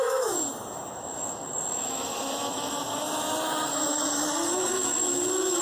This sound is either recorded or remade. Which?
remade